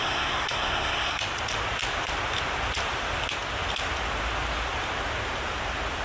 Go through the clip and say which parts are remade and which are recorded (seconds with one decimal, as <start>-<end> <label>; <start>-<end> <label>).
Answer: 0.0-1.2 remade; 1.2-6.0 recorded

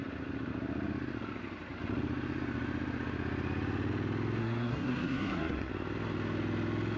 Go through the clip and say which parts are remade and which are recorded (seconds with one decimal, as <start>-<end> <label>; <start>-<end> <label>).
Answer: 0.0-4.4 recorded; 4.4-5.7 remade; 5.7-7.0 recorded

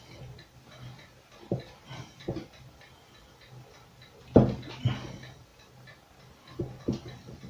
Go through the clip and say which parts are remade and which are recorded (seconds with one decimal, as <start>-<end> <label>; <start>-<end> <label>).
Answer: 0.0-7.5 recorded

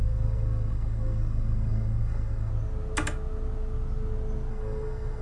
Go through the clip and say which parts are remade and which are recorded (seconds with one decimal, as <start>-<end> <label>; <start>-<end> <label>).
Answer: 0.0-2.5 remade; 2.5-4.5 recorded; 4.5-5.2 remade

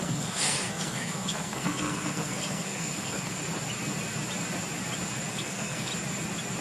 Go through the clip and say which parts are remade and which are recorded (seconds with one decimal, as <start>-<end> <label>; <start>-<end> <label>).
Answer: 0.0-3.4 remade; 3.4-5.3 recorded; 5.3-5.9 remade; 5.9-6.6 recorded